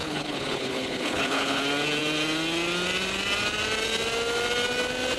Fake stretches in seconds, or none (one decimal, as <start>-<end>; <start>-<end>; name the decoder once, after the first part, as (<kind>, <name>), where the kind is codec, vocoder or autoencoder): 0.0-1.6 (codec, HILCodec)